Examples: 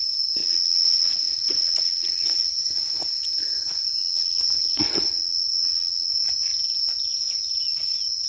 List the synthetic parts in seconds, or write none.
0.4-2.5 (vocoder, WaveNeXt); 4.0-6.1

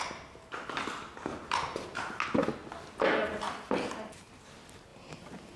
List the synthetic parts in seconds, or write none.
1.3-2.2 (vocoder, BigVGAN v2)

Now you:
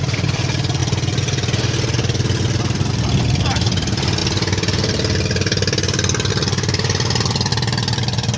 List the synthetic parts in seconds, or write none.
none